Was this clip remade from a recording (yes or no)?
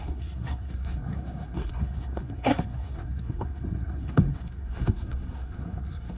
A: yes